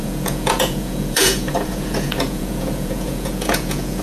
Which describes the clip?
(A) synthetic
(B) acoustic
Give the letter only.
A